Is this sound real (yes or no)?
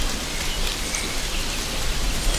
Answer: yes